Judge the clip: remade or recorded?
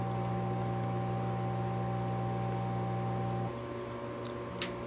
recorded